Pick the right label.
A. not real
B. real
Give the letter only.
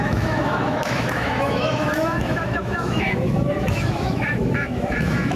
A